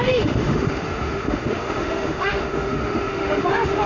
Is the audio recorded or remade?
remade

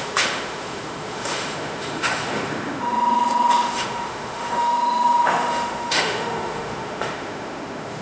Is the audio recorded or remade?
remade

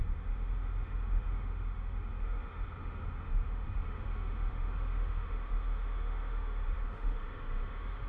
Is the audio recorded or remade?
remade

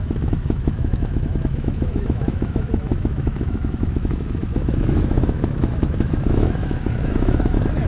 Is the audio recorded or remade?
remade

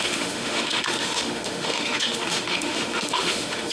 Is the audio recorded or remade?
remade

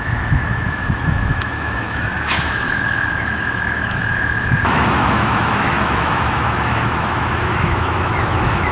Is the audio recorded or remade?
remade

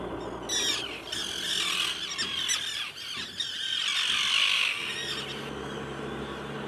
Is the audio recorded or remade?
recorded